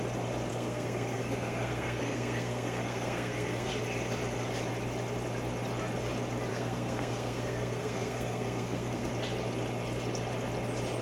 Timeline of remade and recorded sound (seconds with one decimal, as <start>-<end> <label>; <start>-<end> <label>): 0.0-0.5 recorded; 0.5-3.7 remade; 3.7-6.5 recorded; 6.5-9.1 remade; 9.1-11.0 recorded